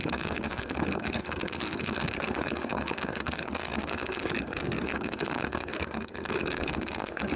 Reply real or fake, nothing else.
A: fake